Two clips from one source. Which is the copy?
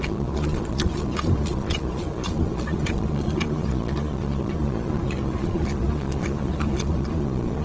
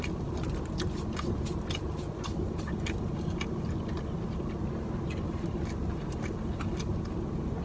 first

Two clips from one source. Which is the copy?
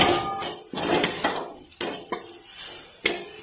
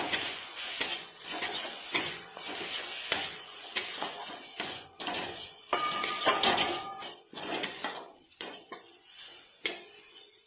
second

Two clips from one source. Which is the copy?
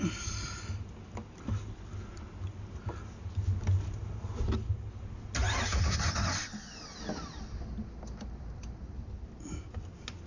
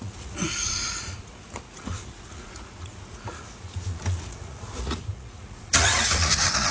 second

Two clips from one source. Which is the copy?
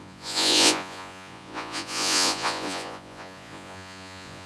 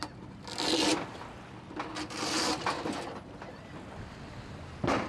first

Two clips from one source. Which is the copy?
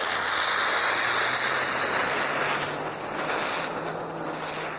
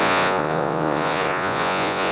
second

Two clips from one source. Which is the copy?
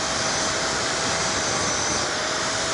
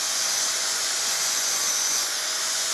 second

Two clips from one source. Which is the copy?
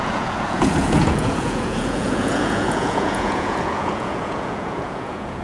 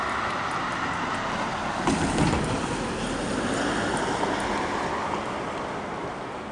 first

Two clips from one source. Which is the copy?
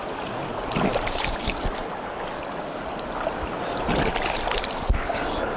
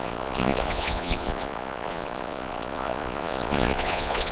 second